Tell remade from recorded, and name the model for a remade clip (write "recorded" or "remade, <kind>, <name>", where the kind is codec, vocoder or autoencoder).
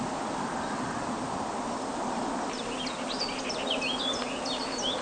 recorded